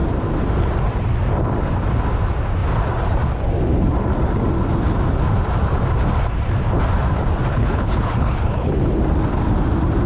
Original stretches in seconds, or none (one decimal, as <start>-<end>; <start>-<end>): 0.0-7.5; 8.8-10.1

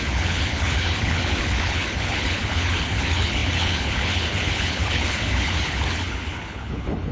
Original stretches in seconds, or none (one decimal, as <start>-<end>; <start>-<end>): none

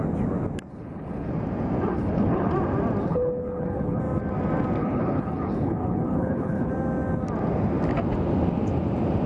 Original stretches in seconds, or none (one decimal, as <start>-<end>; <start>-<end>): 0.0-0.7; 1.3-1.9; 2.5-3.1; 4.0-4.8; 6.7-9.3

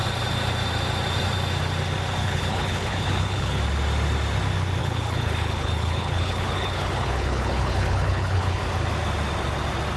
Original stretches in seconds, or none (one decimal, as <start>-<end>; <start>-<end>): 0.0-2.2; 3.6-4.8; 8.6-10.0

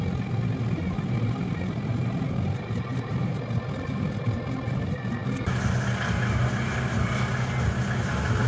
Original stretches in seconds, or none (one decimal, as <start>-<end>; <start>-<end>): 0.0-8.5

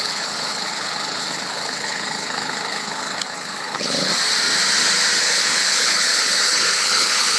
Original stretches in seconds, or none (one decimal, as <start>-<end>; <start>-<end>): 4.1-5.2